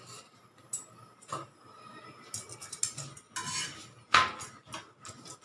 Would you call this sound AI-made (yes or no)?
no